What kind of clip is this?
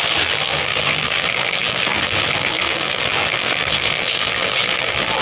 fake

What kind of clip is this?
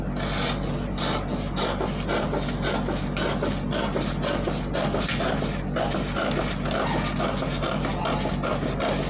real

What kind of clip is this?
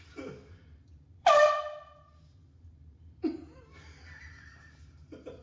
fake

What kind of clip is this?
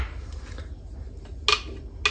real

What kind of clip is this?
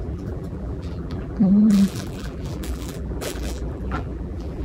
fake